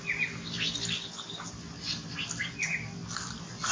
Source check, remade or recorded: recorded